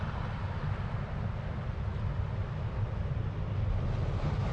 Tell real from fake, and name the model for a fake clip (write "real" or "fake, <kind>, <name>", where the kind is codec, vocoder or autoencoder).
real